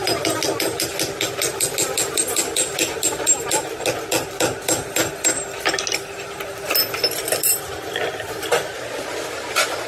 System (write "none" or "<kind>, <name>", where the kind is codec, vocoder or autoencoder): none